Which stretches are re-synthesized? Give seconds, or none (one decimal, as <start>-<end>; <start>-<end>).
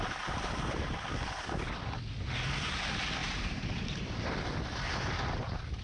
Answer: 3.2-4.3